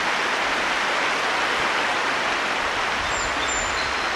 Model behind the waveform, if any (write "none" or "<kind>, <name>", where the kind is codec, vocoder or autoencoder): none